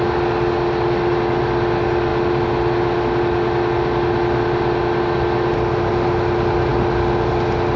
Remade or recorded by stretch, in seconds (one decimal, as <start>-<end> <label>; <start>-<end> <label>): 0.0-7.8 recorded